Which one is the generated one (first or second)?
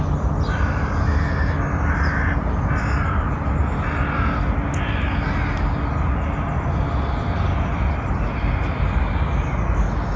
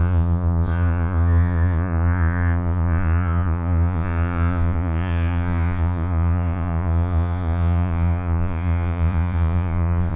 second